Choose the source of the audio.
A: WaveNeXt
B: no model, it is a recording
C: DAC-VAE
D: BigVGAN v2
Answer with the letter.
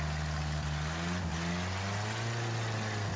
B